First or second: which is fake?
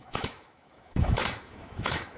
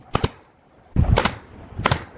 first